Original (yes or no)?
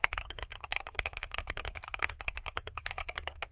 no